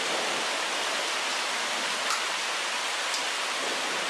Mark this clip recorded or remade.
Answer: recorded